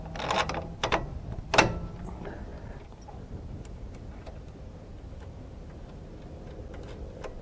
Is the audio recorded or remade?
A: recorded